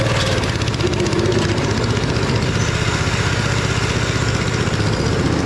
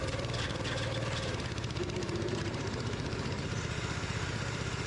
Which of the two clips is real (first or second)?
first